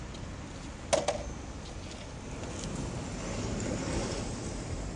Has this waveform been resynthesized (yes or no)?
no